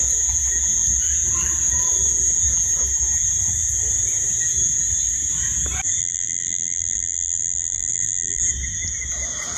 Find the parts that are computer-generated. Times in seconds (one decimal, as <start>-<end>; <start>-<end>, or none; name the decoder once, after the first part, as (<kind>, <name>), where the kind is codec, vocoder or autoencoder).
6.0-8.4 (vocoder, BigVGAN v2)

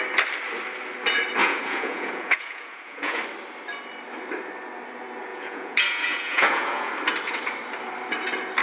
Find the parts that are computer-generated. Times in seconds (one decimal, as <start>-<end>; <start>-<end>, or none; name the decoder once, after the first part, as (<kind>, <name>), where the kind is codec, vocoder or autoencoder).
1.4-3.2 (vocoder, Vocos); 5.3-6.9

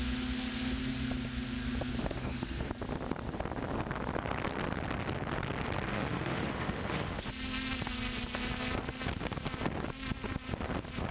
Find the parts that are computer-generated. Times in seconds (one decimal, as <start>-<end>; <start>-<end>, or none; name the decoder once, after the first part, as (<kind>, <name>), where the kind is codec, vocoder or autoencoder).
2.0-2.7 (autoencoder, DAC-VAE); 5.9-7.3